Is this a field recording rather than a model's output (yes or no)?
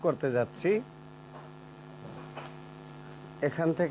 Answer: no